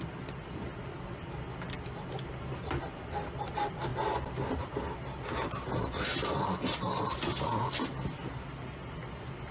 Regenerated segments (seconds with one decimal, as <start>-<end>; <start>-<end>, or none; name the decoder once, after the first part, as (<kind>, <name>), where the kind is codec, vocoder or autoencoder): none